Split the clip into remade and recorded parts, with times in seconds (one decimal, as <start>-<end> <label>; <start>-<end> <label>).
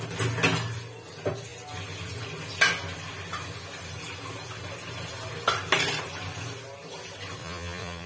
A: 0.0-7.4 recorded; 7.4-8.1 remade